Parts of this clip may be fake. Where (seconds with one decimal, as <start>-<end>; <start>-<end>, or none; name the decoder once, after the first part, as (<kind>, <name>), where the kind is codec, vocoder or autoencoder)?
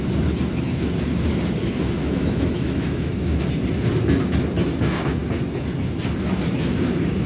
2.0-3.4 (autoencoder, DAC-VAE)